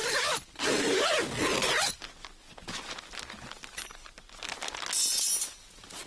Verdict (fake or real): real